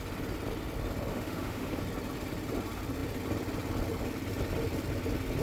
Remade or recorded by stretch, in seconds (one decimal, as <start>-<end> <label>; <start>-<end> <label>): 0.0-1.1 recorded; 1.1-1.8 remade; 1.8-5.4 recorded